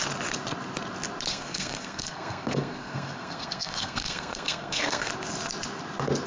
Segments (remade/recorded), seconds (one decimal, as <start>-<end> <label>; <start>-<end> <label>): 0.0-1.3 recorded; 1.3-5.1 remade; 5.1-6.3 recorded